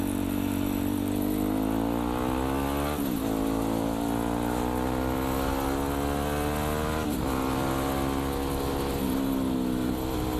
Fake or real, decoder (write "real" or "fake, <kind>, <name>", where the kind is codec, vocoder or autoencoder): real